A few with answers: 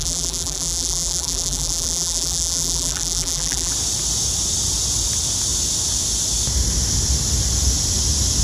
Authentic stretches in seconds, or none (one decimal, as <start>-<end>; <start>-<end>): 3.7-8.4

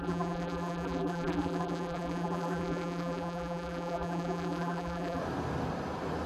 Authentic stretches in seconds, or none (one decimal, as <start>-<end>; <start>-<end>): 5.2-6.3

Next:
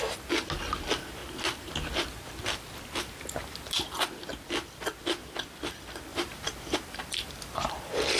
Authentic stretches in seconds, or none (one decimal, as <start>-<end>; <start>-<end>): 0.0-1.2; 1.7-3.4; 4.1-6.1

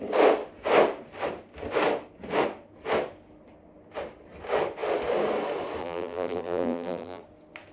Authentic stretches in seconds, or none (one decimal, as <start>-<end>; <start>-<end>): 0.0-5.8; 7.2-7.7

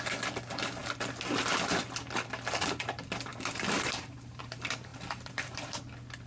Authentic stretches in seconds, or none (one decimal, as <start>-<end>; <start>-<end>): 0.0-3.3; 4.4-4.9; 5.8-6.3